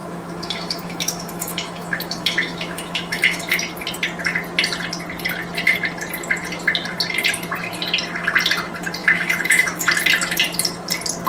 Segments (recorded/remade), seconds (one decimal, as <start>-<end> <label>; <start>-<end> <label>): 0.0-3.6 remade; 3.6-9.0 recorded; 9.0-9.9 remade; 9.9-11.3 recorded